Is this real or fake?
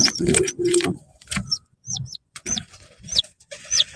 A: fake